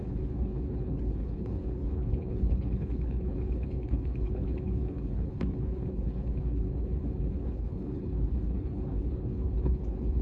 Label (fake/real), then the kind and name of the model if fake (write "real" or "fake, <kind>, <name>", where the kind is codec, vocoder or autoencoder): fake, codec, HILCodec